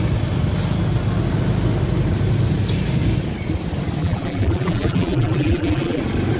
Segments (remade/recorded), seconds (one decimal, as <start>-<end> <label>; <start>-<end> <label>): 0.0-4.0 recorded; 4.0-6.0 remade; 6.0-6.4 recorded